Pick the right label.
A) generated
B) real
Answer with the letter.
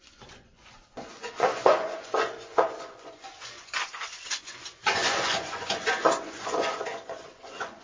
A